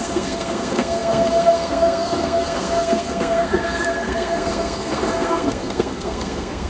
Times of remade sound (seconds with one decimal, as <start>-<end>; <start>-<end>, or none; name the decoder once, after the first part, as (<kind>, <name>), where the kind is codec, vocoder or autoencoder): 0.0-6.7 (codec, SNAC)